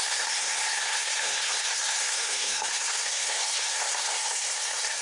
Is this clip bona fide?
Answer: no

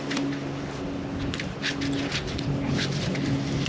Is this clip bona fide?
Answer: yes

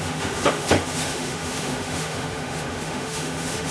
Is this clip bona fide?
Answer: no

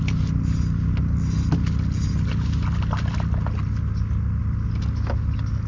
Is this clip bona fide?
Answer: yes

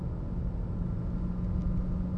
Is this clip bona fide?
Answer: yes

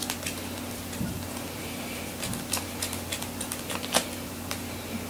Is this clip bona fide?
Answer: yes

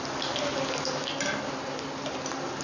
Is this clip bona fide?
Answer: yes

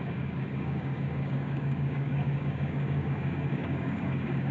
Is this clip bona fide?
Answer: no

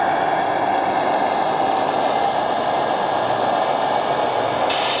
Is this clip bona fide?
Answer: yes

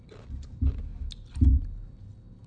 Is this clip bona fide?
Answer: yes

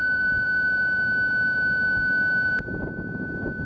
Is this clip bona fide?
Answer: no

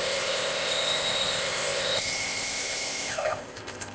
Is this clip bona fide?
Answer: no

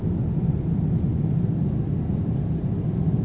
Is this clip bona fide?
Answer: yes